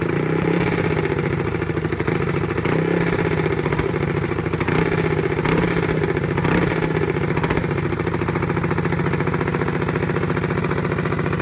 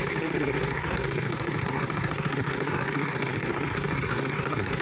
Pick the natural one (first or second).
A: first